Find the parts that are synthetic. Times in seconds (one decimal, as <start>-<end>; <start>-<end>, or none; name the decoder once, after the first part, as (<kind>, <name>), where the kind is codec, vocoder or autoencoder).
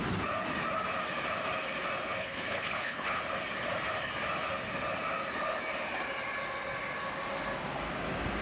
2.2-3.2 (codec, HILCodec)